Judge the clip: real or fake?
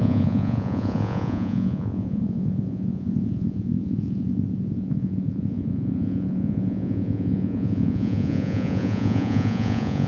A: fake